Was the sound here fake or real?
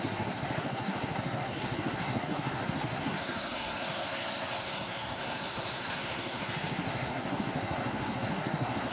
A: fake